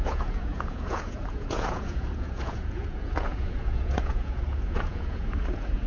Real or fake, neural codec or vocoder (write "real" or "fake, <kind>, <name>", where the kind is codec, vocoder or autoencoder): fake, vocoder, Vocos